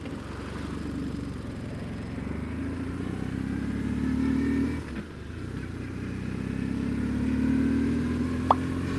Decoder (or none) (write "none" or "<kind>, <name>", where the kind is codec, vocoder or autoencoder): none